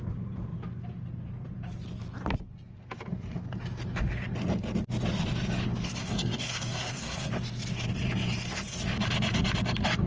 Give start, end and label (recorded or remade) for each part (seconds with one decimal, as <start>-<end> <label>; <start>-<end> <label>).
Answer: 0.0-6.0 recorded; 6.0-7.3 remade; 7.3-10.1 recorded

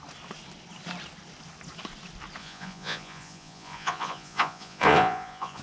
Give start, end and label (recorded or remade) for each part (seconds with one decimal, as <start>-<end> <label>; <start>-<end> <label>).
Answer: 0.0-2.4 recorded; 2.4-5.6 remade